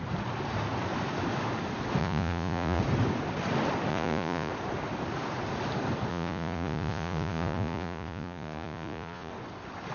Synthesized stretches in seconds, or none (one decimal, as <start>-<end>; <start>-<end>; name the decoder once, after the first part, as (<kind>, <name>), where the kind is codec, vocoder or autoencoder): 2.0-2.8 (vocoder, Vocos); 3.9-4.5; 6.1-9.3